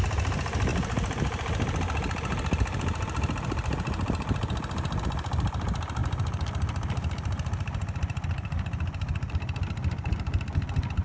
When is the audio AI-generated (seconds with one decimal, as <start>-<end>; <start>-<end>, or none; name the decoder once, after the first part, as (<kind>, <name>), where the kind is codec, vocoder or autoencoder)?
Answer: none